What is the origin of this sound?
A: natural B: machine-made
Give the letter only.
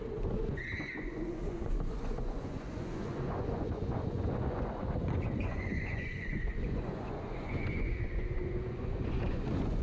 B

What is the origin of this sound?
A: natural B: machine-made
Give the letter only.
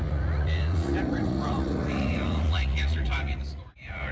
B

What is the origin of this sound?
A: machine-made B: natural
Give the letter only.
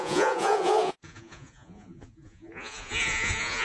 A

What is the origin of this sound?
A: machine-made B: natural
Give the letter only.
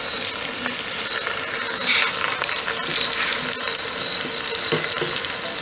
B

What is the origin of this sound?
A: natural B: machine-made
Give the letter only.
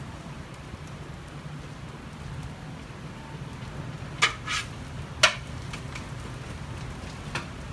A